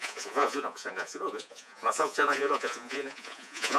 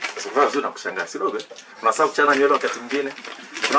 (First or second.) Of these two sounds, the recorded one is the second